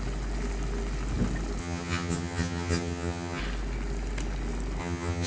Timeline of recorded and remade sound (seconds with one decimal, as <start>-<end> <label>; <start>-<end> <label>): 0.0-1.6 recorded; 1.6-3.4 remade; 3.4-4.8 recorded; 4.8-5.3 remade